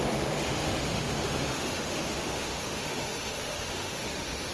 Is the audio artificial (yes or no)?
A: yes